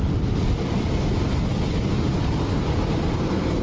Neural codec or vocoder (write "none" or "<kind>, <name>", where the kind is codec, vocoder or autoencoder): none